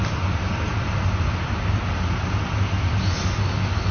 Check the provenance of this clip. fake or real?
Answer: real